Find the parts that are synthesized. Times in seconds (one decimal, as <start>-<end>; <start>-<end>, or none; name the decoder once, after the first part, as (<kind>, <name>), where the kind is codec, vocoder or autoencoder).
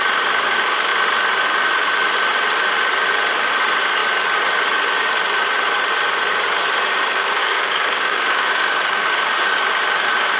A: 7.4-9.3 (codec, DAC)